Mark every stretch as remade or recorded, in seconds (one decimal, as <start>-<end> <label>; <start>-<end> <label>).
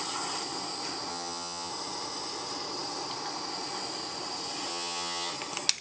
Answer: 0.0-1.1 recorded; 1.1-1.7 remade; 1.7-4.7 recorded; 4.7-5.3 remade; 5.3-5.8 recorded